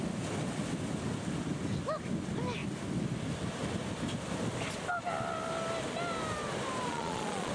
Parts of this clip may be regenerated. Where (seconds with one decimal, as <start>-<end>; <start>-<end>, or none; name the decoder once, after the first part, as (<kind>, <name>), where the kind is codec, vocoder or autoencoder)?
6.9-7.5 (vocoder, Vocos)